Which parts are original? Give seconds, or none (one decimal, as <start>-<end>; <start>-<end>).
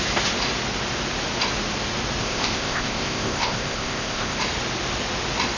0.0-2.2; 4.4-5.6